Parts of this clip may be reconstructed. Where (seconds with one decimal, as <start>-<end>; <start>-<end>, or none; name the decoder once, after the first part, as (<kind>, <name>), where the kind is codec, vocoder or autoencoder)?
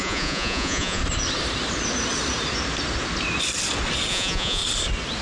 0.0-1.0 (vocoder, Vocos); 4.1-4.6